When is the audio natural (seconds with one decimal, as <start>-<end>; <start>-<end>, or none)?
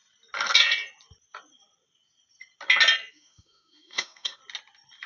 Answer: 0.0-3.1; 4.4-5.1